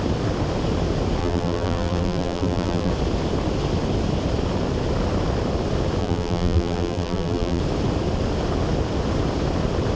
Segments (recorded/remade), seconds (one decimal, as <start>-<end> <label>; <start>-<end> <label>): 0.0-1.2 recorded; 1.2-2.9 remade; 2.9-6.0 recorded; 6.0-7.6 remade; 7.6-10.0 recorded